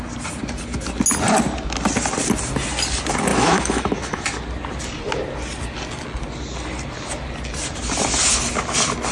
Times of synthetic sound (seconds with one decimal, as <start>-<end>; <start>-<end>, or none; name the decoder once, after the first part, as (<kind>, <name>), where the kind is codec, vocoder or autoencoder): 3.3-4.2 (autoencoder, DAC-VAE)